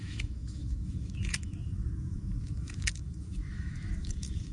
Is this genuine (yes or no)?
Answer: no